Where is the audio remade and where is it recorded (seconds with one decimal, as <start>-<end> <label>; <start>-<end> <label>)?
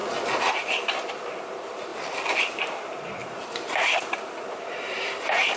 0.0-0.5 recorded; 0.5-1.9 remade; 1.9-2.4 recorded; 2.4-5.6 remade